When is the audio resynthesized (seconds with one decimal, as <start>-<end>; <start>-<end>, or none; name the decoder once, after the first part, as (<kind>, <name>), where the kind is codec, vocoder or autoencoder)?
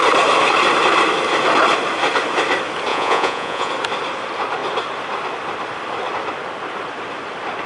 2.9-3.7 (vocoder, Vocos)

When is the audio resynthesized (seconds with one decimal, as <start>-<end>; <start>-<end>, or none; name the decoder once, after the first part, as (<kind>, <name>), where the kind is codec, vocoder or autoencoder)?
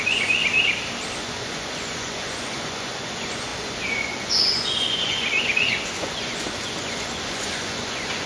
0.0-0.4 (vocoder, Vocos); 1.2-8.3